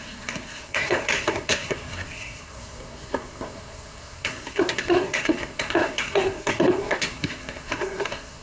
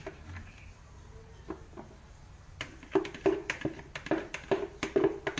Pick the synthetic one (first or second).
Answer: first